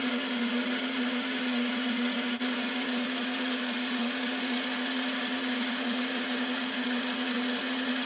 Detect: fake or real fake